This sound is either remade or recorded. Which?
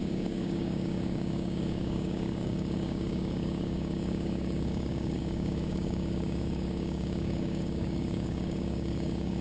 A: remade